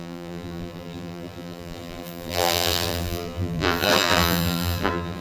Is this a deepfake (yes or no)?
yes